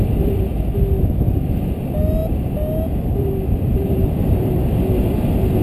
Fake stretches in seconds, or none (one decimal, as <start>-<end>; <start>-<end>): 0.0-0.5; 1.3-2.2; 3.1-5.6